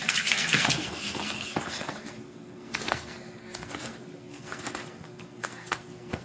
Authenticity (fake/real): fake